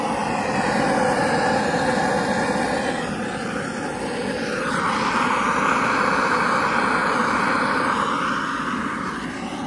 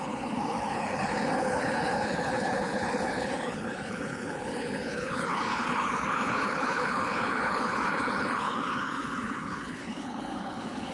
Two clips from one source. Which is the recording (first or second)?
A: first